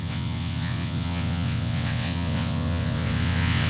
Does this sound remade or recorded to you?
remade